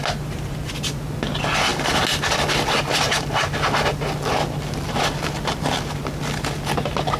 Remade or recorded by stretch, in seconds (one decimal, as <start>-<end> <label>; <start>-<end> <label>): 0.0-7.2 recorded